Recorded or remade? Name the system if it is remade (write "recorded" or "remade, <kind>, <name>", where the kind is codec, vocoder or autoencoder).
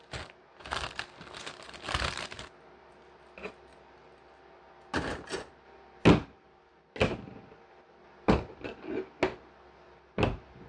recorded